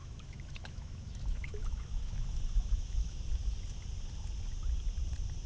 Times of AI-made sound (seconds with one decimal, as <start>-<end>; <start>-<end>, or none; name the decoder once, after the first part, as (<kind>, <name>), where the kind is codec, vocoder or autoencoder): 0.0-3.2 (autoencoder, DAC-VAE)

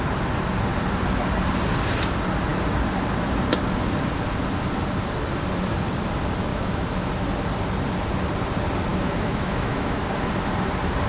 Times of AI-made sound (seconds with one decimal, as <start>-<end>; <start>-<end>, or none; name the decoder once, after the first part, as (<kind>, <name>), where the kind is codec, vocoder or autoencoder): 6.5-7.1 (autoencoder, DAC-VAE); 8.9-10.0

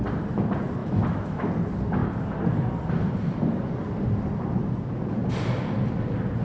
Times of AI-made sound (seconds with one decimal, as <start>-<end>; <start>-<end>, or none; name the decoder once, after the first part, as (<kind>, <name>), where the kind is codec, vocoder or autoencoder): 0.8-1.5 (autoencoder, DAC-VAE)

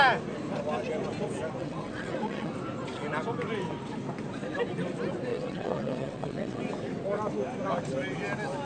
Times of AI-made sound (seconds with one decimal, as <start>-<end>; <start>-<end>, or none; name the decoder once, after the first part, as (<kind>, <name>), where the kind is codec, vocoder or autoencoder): 1.6-2.5 (vocoder, WaveNeXt); 5.3-6.6

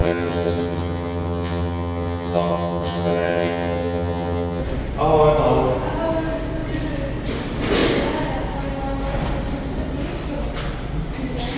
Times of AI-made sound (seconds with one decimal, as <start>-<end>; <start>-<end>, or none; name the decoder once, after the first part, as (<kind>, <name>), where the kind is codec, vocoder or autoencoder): 0.0-4.6 (vocoder, HiFi-GAN)

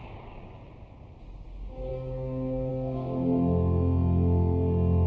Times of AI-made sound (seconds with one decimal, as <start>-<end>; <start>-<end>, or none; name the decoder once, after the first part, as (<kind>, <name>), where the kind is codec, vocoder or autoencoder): 0.0-0.7 (codec, DAC); 1.9-2.7

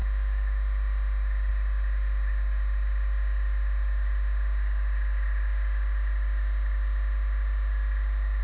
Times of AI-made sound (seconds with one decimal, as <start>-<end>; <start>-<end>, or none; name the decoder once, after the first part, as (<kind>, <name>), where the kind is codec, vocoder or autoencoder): none

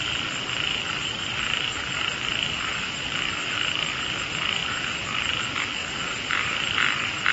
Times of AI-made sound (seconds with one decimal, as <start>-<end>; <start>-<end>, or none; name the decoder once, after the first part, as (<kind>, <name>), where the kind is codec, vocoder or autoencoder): 1.0-3.3 (vocoder, BigVGAN v2); 4.6-5.3; 5.8-7.3